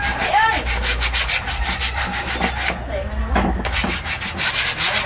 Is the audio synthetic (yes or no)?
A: no